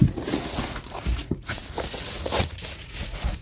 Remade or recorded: remade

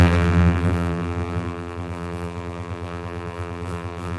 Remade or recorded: remade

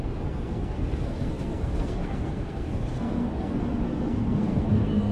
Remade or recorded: remade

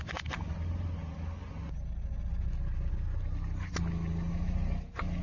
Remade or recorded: recorded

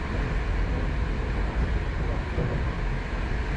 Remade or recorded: recorded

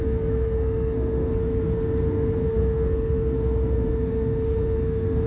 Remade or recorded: remade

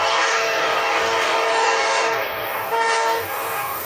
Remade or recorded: remade